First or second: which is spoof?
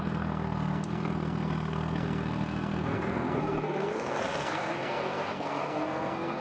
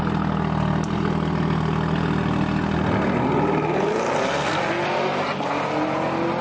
first